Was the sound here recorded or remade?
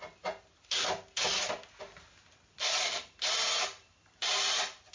recorded